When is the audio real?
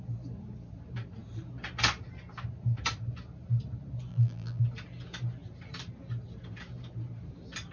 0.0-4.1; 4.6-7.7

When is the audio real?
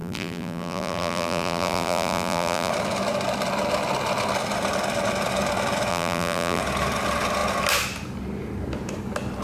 2.7-5.9; 6.6-9.4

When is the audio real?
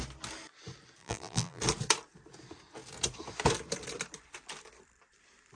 0.0-1.0; 1.6-5.6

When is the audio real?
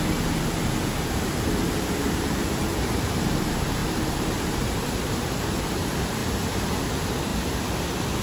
6.2-6.8; 7.3-8.2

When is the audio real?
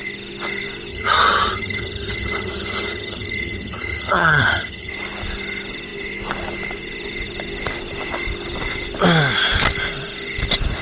0.0-0.9; 4.9-10.8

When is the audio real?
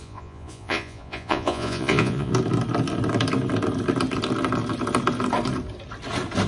2.3-6.5